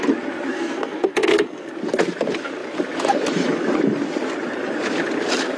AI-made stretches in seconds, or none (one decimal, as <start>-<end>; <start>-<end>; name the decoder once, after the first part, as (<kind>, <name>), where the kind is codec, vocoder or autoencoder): 0.5-1.7 (codec, SNAC)